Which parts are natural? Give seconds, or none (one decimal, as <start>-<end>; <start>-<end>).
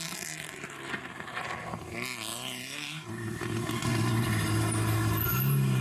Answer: 0.0-2.3; 3.1-5.8